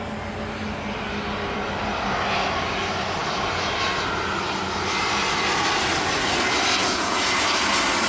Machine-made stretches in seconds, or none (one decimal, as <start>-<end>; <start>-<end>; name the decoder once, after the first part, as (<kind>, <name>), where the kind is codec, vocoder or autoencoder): 6.8-7.3 (vocoder, Vocos)